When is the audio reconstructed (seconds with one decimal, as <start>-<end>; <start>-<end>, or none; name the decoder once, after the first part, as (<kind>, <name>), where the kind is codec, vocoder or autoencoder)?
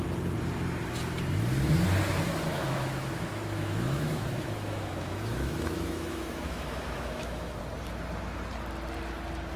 2.5-7.6 (autoencoder, DAC-VAE)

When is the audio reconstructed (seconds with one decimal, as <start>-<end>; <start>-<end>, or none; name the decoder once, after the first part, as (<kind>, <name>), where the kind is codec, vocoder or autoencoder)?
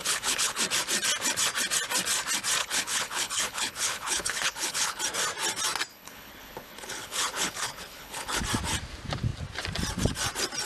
0.0-0.6 (codec, HILCodec); 2.6-5.0; 5.9-8.4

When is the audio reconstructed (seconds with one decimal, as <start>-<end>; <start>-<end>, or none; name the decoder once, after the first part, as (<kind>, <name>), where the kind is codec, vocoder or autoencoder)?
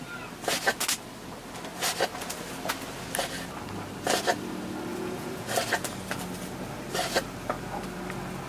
4.9-5.5 (vocoder, Vocos)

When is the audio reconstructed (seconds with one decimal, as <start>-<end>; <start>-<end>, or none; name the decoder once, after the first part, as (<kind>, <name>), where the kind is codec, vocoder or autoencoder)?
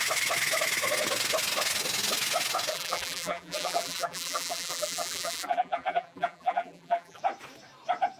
2.7-7.2 (vocoder, BigVGAN v2)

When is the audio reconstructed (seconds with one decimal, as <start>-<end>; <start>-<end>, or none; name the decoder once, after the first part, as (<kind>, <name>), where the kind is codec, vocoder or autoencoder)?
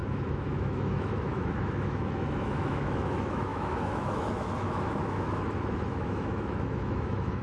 0.0-7.4 (autoencoder, DAC-VAE)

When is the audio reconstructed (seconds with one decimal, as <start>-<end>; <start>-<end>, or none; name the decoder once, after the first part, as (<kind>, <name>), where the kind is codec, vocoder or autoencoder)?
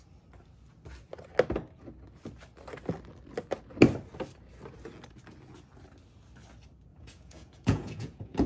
6.9-8.5 (vocoder, Vocos)